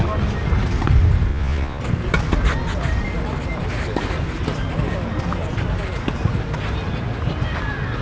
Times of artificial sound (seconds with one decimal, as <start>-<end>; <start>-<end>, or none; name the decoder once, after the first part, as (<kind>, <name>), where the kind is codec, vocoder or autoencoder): 1.3-1.8 (vocoder, Vocos)